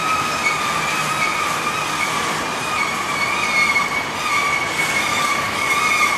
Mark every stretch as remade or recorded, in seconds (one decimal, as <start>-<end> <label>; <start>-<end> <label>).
0.0-5.1 recorded; 5.1-5.7 remade; 5.7-6.2 recorded